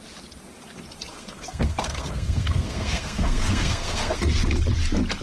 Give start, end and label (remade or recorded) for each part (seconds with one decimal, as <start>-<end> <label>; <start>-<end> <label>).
0.0-1.1 recorded; 1.1-4.2 remade; 4.2-5.2 recorded